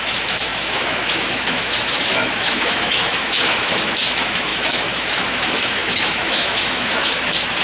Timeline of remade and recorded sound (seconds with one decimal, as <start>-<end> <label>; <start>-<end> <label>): 0.0-7.6 remade